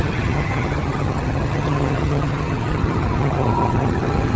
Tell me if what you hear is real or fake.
fake